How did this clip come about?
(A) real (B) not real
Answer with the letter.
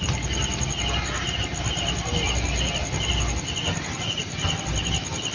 A